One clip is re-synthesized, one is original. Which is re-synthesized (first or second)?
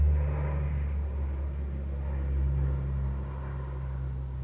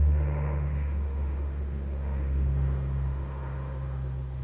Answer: second